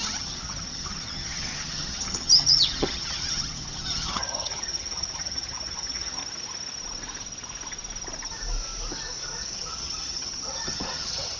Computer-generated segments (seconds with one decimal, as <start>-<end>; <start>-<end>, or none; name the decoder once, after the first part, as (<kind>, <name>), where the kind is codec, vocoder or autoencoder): 0.0-6.2 (vocoder, HiFi-GAN); 9.4-11.4